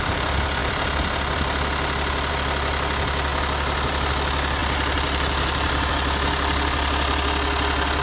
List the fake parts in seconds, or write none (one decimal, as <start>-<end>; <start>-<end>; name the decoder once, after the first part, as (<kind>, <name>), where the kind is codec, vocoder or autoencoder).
4.6-5.9 (vocoder, BigVGAN v2)